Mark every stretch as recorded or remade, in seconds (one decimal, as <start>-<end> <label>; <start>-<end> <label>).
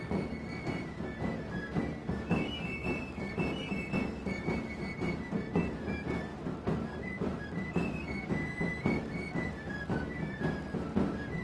0.0-2.0 recorded; 2.0-3.3 remade; 3.3-11.4 recorded